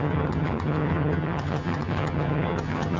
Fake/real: fake